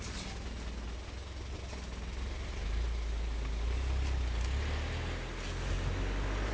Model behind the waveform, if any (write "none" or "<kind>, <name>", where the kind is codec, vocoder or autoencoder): none